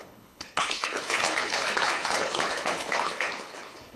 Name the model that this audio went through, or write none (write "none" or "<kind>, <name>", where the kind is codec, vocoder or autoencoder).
codec, HILCodec